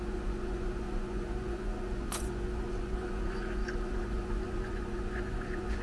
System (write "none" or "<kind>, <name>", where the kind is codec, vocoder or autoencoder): vocoder, Vocos